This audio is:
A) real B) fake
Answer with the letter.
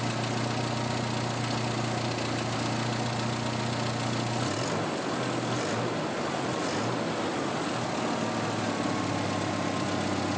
A